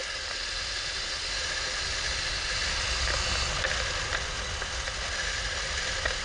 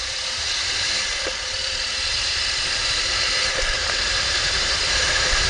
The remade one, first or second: second